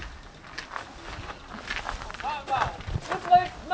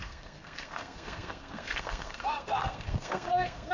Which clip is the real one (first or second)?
first